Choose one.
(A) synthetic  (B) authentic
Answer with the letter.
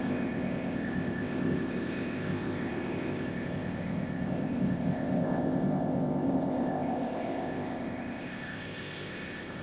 A